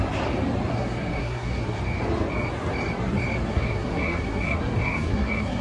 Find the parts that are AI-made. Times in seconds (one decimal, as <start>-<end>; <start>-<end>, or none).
0.7-1.8; 3.5-5.6